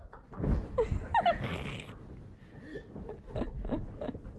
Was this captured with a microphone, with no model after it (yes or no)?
yes